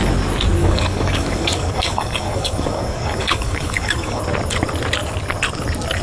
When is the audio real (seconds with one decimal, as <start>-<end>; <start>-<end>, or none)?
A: 0.0-0.6; 4.2-6.0